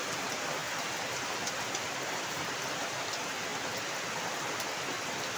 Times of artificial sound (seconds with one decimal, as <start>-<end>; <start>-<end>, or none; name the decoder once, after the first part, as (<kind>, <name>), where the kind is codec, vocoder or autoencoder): 0.6-3.1 (vocoder, BigVGAN v2)